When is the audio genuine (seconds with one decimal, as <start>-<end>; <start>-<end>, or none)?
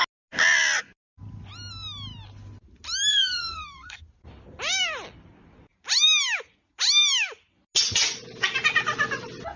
0.0-3.1; 4.0-9.6